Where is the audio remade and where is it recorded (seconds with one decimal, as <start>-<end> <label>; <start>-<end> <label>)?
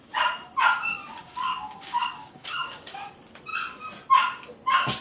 0.0-1.2 recorded; 1.2-3.1 remade; 3.1-5.0 recorded